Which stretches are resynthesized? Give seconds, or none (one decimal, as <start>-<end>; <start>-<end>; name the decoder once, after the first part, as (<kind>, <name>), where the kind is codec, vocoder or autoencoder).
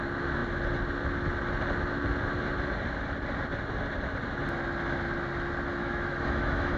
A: 5.8-6.8 (autoencoder, DAC-VAE)